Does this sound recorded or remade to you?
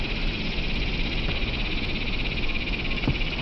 recorded